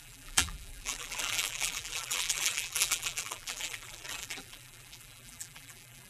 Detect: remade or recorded remade